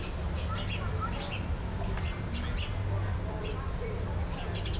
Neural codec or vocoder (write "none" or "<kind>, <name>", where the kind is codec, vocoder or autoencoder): none